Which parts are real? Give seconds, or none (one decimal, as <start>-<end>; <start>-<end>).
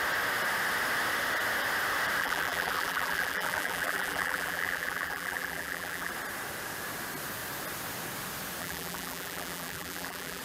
0.0-2.2; 6.1-8.6